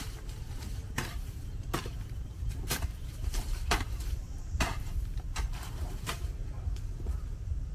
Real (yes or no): no